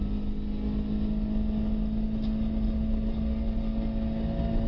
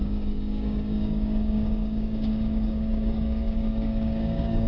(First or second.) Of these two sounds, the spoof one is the second